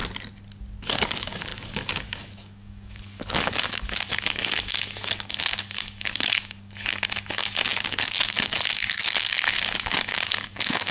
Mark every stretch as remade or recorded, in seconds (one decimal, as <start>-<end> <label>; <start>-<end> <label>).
0.0-0.9 recorded; 0.9-10.9 remade